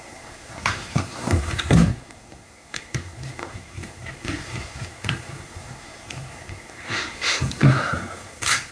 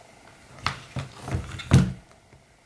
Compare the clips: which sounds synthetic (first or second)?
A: first